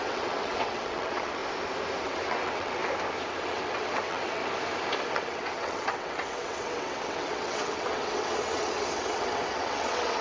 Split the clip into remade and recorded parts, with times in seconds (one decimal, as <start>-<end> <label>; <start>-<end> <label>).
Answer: 0.0-1.4 remade; 1.4-2.0 recorded; 2.0-2.8 remade; 2.8-3.4 recorded; 3.4-4.4 remade; 4.4-5.0 recorded; 5.0-10.2 remade